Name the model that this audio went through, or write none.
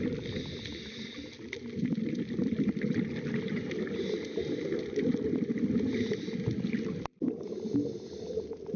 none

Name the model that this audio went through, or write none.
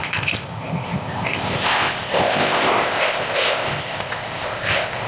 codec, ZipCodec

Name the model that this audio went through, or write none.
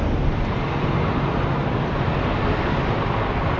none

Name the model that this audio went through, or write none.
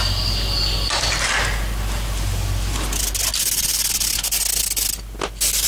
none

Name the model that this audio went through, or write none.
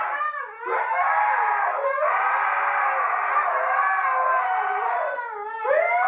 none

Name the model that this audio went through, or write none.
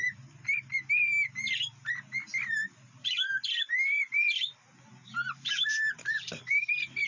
none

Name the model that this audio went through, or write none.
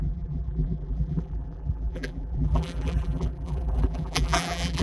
vocoder, BigVGAN v2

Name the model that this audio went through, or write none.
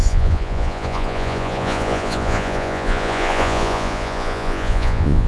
vocoder, Vocos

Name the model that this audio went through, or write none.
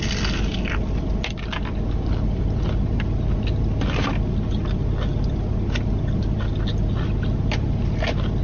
none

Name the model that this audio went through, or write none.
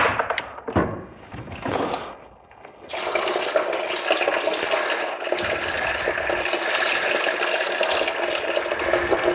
none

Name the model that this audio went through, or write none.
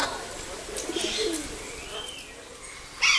none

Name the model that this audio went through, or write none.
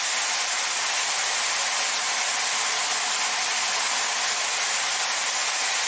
none